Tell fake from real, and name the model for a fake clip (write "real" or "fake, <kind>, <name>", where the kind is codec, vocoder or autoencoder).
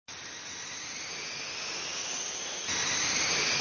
real